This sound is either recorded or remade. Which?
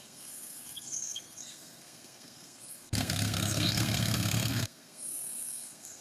remade